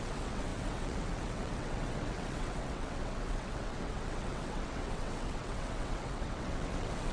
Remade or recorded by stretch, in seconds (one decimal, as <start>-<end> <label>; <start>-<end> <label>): 0.0-7.1 remade